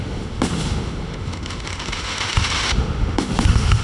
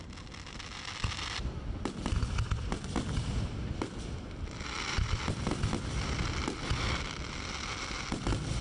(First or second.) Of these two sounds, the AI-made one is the first